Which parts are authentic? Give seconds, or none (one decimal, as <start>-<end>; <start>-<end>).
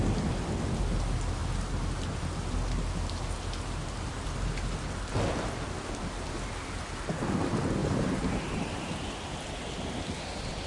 0.0-7.8; 8.9-10.7